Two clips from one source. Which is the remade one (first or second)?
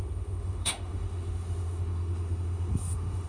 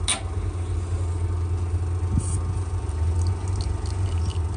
first